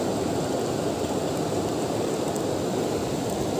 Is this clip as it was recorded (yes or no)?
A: yes